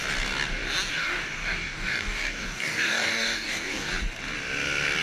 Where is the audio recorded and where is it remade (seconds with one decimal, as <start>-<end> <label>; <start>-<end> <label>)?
0.0-0.9 recorded; 0.9-3.9 remade; 3.9-5.0 recorded